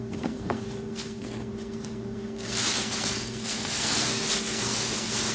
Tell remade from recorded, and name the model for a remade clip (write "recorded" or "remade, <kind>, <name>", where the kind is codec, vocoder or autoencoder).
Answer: remade, codec, SNAC